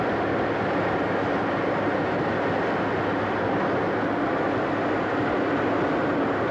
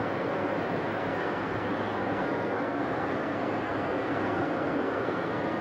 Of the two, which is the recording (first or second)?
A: first